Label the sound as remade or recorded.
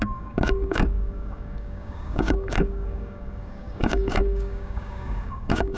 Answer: remade